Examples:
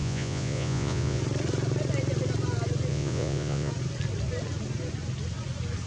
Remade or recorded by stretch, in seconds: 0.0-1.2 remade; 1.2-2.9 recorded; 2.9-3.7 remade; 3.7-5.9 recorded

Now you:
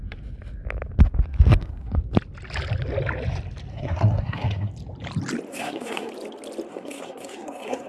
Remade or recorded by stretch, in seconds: 0.0-1.5 recorded; 1.5-2.0 remade; 2.0-3.7 recorded; 3.7-4.7 remade; 4.7-5.5 recorded; 5.5-6.1 remade; 6.1-6.7 recorded; 6.7-7.9 remade

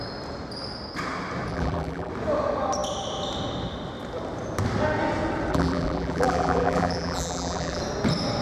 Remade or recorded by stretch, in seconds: 0.0-1.5 recorded; 1.5-2.1 remade; 2.1-5.5 recorded; 5.5-7.8 remade; 7.8-8.4 recorded